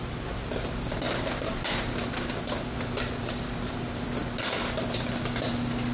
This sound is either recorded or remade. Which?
recorded